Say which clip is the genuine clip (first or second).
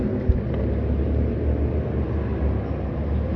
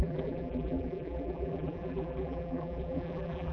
first